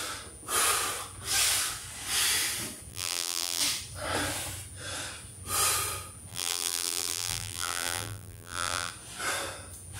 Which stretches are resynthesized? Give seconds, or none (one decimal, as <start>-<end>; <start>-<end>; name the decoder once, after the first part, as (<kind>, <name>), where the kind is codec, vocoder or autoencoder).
2.9-3.6 (vocoder, BigVGAN v2); 6.3-8.9